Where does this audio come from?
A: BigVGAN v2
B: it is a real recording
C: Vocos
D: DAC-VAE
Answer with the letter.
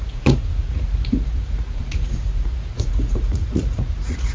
C